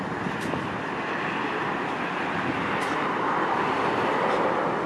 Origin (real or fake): real